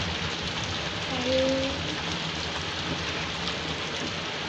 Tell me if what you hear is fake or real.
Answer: real